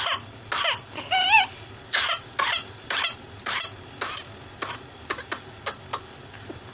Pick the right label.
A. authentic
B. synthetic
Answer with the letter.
A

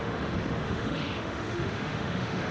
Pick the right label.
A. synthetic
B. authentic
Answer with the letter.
A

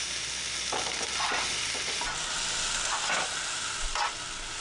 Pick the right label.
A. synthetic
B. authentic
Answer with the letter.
B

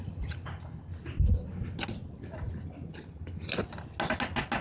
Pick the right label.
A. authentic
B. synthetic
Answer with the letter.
A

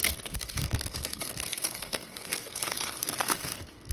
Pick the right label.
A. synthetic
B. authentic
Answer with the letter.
A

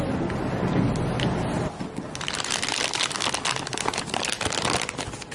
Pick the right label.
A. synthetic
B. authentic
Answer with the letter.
B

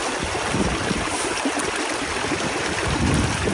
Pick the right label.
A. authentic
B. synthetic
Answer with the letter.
A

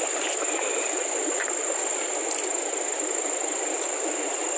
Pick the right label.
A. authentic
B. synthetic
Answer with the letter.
A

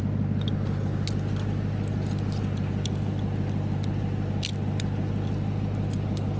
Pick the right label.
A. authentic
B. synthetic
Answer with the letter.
A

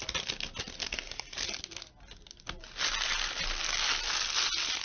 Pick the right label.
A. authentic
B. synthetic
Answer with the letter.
A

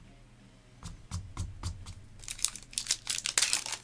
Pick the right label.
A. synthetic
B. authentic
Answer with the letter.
B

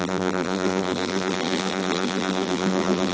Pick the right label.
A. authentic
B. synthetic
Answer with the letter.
B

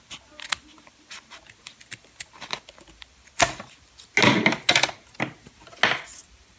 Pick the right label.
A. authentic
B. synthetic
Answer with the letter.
A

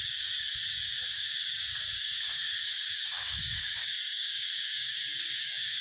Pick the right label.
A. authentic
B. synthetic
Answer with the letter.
B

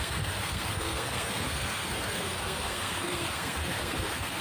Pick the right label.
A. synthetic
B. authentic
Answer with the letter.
A